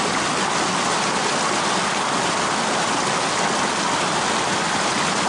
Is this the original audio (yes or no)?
yes